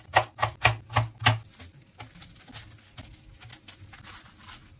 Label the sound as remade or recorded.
recorded